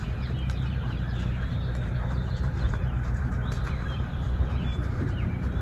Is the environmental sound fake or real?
fake